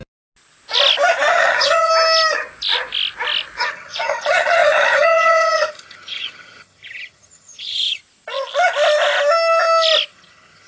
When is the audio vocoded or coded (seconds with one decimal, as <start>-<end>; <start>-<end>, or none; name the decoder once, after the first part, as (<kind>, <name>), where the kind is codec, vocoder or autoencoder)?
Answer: 1.3-1.9 (vocoder, HiFi-GAN); 3.6-8.0; 10.1-10.7